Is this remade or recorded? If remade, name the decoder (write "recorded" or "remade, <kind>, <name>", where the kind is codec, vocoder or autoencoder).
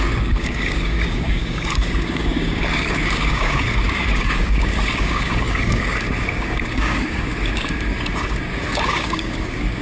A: remade, codec, DAC